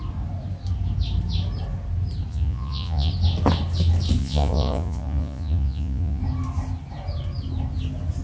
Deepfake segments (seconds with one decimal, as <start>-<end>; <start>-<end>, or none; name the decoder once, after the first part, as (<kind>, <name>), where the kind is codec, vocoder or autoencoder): 2.3-3.1 (vocoder, Vocos); 4.2-6.2